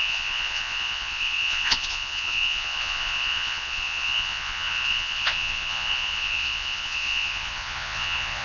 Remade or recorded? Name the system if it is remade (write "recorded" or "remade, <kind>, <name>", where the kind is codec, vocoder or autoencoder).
remade, vocoder, Vocos